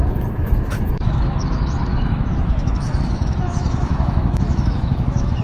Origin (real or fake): fake